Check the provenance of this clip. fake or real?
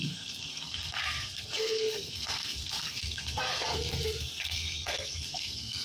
fake